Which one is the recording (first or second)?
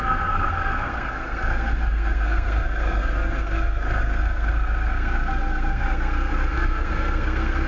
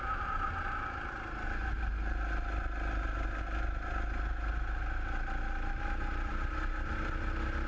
second